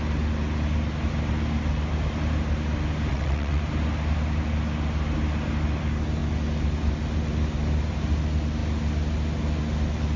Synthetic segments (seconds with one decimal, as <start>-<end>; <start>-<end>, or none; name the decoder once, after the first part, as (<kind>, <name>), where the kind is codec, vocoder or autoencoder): 3.1-3.6 (vocoder, WaveNeXt)